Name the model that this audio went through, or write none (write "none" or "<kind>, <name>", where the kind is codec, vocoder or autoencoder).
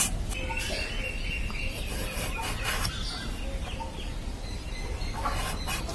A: none